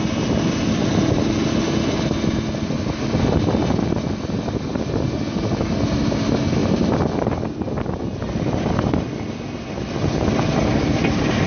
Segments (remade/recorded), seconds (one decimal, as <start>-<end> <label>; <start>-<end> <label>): 0.0-6.6 recorded; 6.6-7.6 remade; 7.6-11.5 recorded